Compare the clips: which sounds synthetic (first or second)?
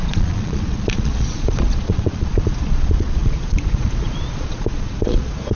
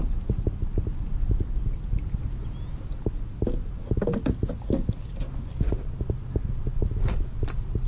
first